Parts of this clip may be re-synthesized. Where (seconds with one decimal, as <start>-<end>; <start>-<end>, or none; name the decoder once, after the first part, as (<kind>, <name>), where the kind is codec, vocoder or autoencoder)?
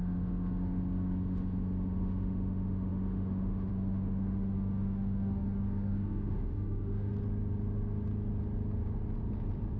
0.0-7.1 (autoencoder, DAC-VAE)